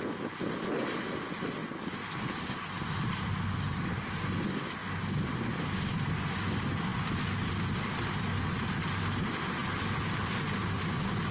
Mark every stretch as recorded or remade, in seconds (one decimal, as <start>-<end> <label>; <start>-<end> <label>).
0.0-1.6 recorded; 1.6-2.2 remade; 2.2-9.6 recorded; 9.6-10.8 remade; 10.8-11.3 recorded